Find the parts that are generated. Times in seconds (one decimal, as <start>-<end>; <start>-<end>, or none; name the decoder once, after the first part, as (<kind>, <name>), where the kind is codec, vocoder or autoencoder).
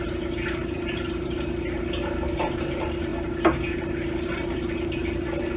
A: 0.0-5.6 (vocoder, BigVGAN v2)